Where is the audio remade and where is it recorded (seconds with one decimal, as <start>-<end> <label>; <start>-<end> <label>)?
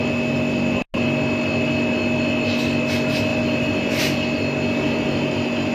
0.0-3.3 recorded; 3.3-4.0 remade; 4.0-5.7 recorded